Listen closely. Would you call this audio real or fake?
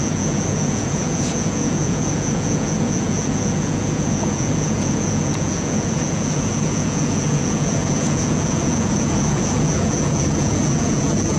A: fake